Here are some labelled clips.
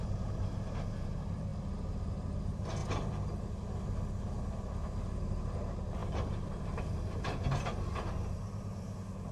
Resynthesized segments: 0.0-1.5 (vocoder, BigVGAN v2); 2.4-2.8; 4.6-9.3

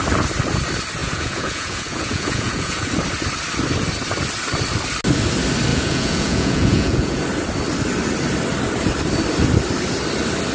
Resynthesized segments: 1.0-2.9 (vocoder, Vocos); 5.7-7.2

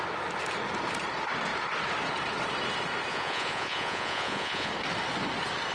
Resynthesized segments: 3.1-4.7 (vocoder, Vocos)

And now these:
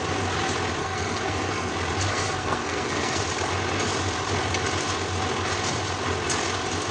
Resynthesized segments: 0.8-1.7 (codec, SNAC); 2.1-3.2